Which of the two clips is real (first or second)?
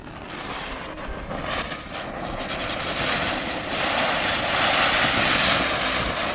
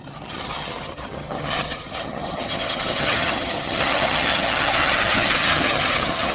first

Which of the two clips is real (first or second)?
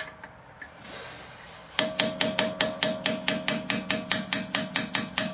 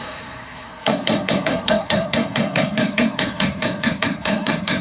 first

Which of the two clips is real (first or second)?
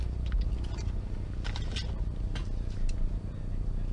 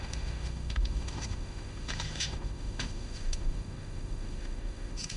first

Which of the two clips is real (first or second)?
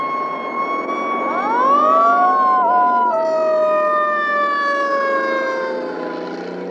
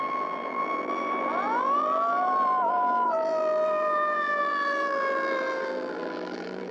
first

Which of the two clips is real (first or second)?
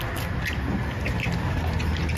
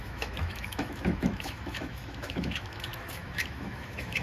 first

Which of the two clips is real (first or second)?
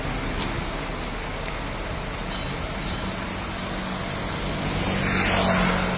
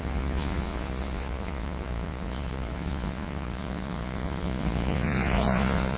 first